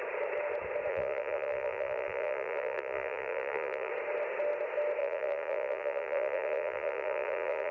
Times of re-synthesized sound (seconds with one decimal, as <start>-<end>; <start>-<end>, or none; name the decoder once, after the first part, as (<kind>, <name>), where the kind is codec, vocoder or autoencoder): 0.9-3.9 (vocoder, Vocos); 5.0-7.7